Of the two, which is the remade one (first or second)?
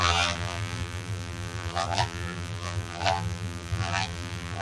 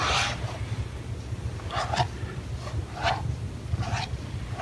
first